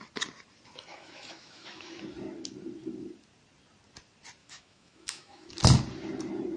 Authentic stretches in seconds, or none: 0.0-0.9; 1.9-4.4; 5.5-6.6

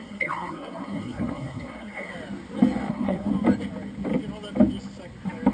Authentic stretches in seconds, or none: 2.1-2.9; 3.3-5.5

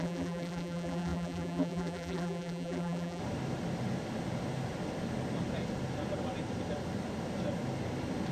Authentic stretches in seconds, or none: 3.2-8.3

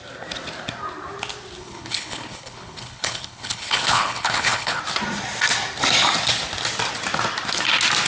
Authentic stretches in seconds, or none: 0.0-1.6; 4.8-8.1

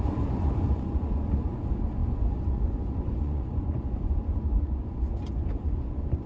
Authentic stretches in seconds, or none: none

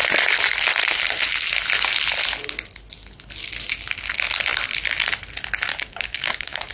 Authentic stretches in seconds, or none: 0.0-5.7

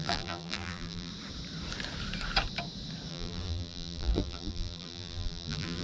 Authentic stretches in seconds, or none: 1.1-3.1

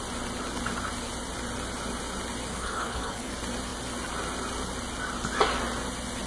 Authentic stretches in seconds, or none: 0.0-2.5; 3.3-6.3